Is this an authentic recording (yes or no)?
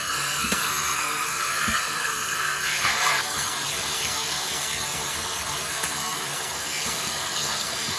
no